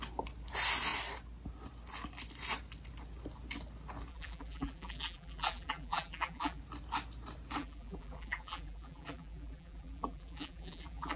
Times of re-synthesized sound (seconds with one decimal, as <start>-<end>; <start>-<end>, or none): 4.1-6.6; 7.6-11.2